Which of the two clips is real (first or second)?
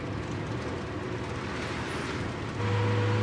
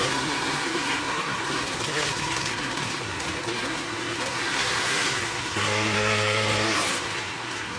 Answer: first